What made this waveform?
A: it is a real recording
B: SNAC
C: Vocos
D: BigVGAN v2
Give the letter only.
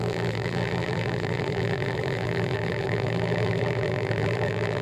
D